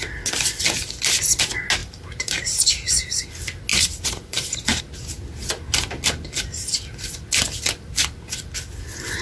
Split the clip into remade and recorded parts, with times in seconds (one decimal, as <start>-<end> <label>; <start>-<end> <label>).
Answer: 0.0-1.8 recorded; 1.8-3.3 remade; 3.3-3.7 recorded; 3.7-4.8 remade; 4.8-9.2 recorded